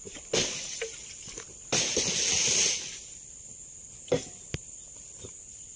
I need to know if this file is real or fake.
real